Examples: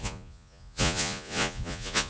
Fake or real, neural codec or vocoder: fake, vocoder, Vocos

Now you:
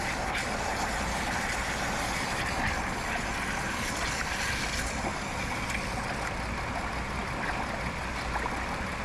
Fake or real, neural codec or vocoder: real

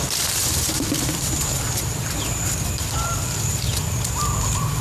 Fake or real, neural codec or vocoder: fake, vocoder, BigVGAN v2